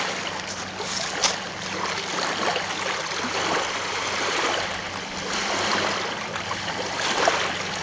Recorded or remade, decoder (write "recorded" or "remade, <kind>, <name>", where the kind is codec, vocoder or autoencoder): recorded